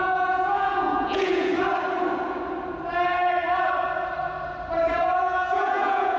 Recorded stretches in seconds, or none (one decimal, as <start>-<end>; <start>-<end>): 1.5-5.2